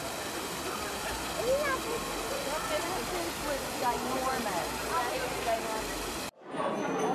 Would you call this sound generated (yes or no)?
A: no